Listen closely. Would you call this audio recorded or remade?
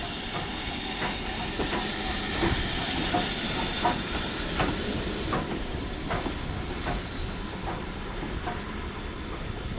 recorded